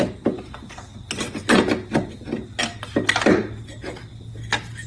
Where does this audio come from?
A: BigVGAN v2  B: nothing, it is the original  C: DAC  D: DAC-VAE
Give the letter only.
B